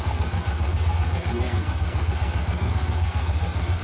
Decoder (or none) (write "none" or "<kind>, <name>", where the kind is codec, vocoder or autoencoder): codec, SNAC